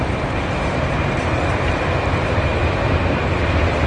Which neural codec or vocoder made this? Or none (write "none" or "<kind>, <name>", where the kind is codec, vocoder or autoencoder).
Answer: none